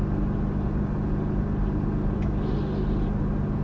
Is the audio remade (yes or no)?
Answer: no